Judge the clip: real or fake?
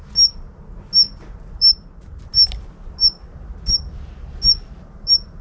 real